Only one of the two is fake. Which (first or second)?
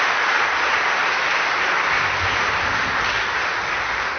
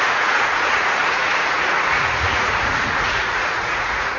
second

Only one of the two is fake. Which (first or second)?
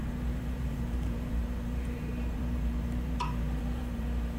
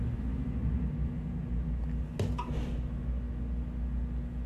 first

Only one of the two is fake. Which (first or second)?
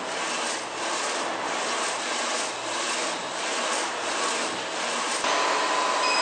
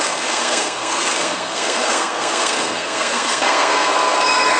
second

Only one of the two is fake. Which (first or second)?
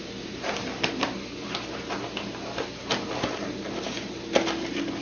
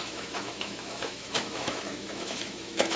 second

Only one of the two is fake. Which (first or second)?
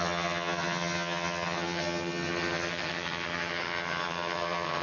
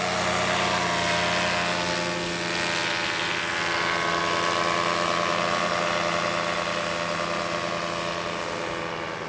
first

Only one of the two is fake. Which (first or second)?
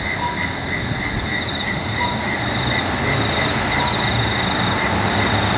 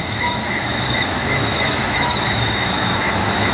second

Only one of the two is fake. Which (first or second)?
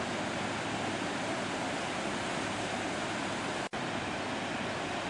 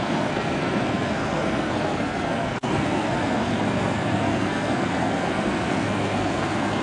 second